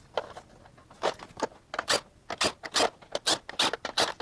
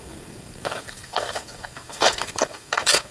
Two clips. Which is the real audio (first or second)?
first